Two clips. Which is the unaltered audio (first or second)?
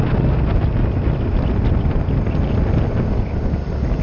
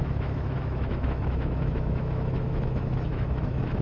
first